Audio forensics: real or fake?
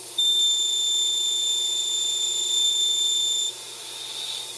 real